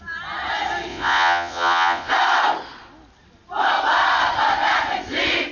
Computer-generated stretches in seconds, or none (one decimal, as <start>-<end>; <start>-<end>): 0.9-2.1